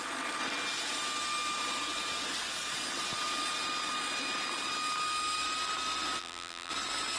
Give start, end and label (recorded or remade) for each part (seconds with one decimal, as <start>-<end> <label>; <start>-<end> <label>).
0.0-6.2 recorded; 6.2-6.7 remade; 6.7-7.2 recorded